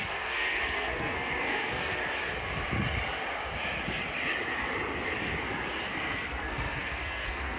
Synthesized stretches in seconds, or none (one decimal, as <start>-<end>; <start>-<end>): 0.0-2.0; 5.8-7.6